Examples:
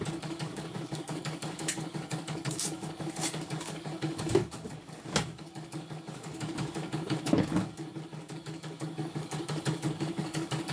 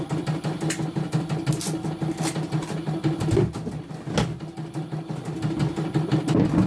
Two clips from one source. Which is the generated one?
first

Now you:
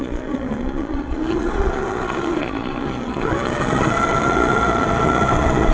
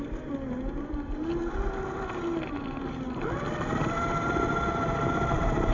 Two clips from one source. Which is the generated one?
first